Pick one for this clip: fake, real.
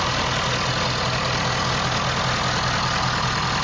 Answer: real